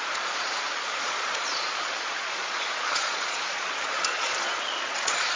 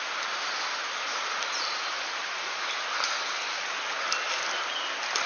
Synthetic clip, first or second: first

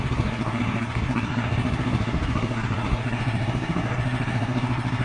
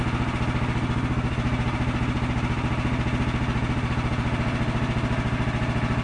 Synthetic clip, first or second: first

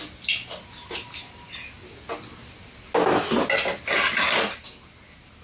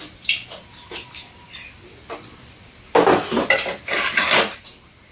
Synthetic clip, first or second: second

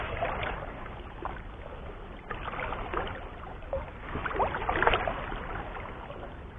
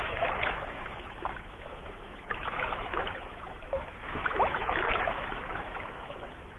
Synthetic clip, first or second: second